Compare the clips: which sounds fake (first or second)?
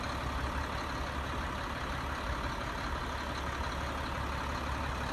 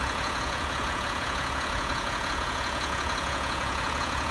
second